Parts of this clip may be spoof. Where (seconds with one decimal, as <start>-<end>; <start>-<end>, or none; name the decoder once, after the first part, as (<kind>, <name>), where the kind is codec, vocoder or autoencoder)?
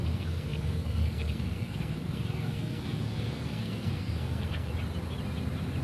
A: 0.0-4.7 (codec, SNAC)